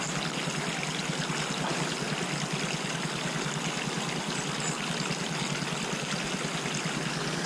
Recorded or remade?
recorded